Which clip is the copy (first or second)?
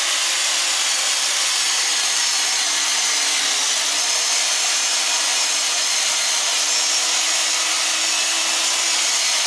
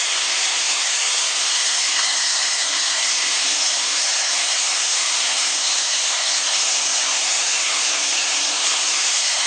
second